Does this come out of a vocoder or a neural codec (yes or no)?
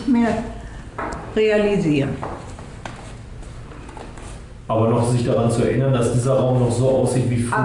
no